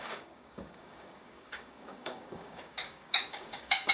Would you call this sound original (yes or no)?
no